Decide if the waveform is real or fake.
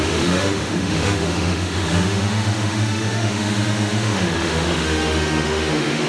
fake